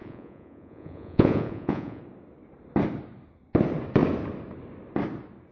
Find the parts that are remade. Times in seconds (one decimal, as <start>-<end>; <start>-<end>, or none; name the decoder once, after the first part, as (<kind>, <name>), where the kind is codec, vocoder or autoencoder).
0.0-2.0 (vocoder, Vocos)